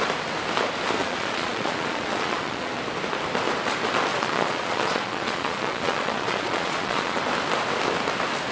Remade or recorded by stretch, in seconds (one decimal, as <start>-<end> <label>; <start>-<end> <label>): 0.0-1.0 recorded; 1.0-2.8 remade; 2.8-4.1 recorded; 4.1-7.2 remade; 7.2-8.5 recorded